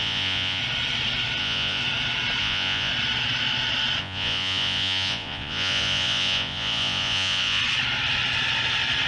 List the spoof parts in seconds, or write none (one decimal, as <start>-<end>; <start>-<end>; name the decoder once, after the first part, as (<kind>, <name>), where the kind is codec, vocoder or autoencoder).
0.0-0.6 (vocoder, Vocos); 1.4-1.8; 2.4-2.9; 4.0-7.6